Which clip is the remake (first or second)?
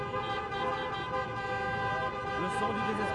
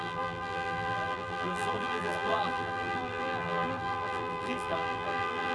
second